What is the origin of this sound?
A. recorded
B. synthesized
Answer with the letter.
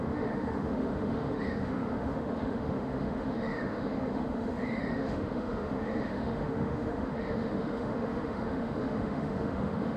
B